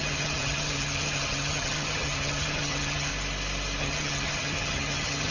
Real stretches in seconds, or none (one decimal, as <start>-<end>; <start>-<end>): 3.1-3.8